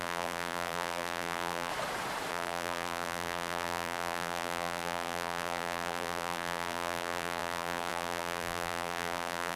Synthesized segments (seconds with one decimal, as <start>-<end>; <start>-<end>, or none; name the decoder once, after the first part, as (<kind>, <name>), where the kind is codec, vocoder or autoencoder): 0.0-1.7 (vocoder, BigVGAN v2); 2.3-9.6